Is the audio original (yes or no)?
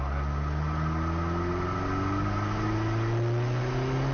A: yes